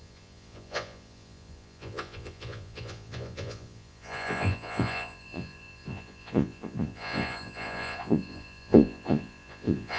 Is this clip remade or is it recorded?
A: remade